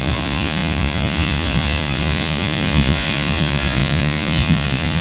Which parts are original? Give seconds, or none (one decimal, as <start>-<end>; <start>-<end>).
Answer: none